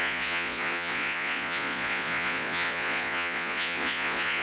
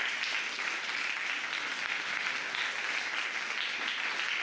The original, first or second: second